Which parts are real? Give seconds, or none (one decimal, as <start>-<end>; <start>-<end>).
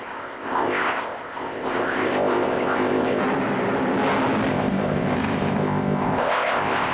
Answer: 3.2-4.5